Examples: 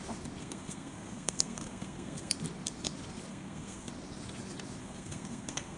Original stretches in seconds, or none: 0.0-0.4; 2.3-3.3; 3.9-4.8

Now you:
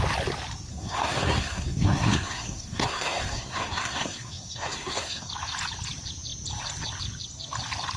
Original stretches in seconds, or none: 0.0-0.7; 5.3-8.0

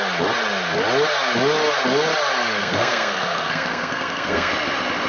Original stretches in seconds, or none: 0.0-2.6; 4.5-5.1

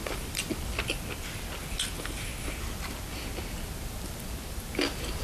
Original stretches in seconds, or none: 0.0-5.2

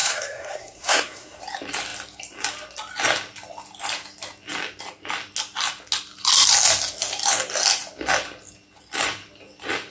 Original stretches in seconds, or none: 1.4-9.9